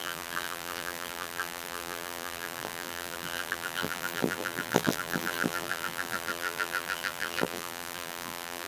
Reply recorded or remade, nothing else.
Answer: remade